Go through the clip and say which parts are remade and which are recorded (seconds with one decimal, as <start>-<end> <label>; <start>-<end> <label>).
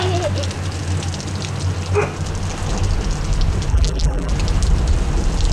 0.0-3.7 recorded; 3.7-4.3 remade; 4.3-5.5 recorded